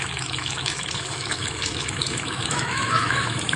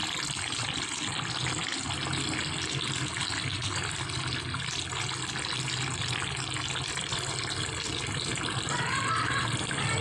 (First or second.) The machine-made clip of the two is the first